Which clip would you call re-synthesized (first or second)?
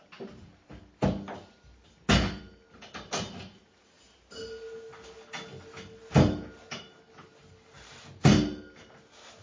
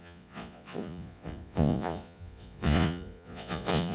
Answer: second